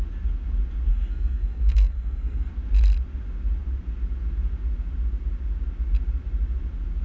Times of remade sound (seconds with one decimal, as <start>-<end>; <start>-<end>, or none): 0.9-2.5

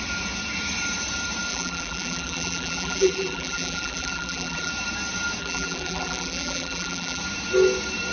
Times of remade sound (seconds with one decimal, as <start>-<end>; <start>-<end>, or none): 1.5-4.7; 5.4-7.2

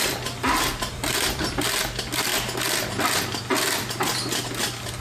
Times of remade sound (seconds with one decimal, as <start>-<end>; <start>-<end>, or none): 0.0-2.3

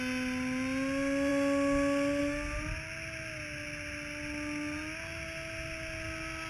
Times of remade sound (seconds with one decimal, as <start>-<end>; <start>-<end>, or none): none

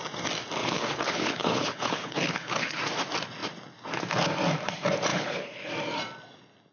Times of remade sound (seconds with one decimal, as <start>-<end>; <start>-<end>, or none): 0.6-2.8; 5.1-5.7